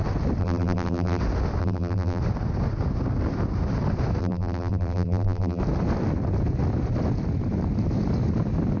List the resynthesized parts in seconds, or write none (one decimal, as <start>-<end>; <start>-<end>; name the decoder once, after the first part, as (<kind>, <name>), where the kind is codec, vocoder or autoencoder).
0.4-1.2 (vocoder, BigVGAN v2); 1.6-2.2; 4.2-5.6